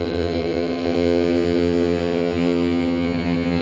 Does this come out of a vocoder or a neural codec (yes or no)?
yes